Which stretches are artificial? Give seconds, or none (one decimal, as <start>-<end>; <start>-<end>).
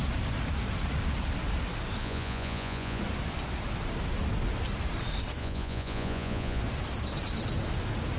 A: 2.0-3.0; 5.4-6.6